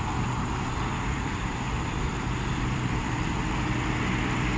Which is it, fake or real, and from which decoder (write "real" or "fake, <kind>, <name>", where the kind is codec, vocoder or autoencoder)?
fake, vocoder, BigVGAN v2